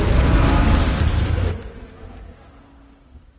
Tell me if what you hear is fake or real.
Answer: real